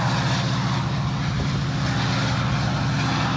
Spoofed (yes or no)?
no